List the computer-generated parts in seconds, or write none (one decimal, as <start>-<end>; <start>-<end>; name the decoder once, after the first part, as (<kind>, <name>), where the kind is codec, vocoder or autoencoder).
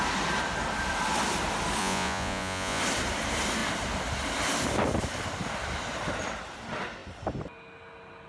1.8-2.8 (vocoder, Vocos)